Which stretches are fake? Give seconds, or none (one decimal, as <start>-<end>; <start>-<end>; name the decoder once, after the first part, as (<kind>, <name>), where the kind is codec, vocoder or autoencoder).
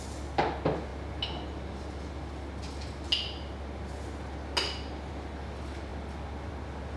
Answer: none